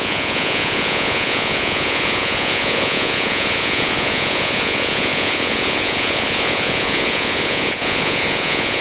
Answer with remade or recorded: remade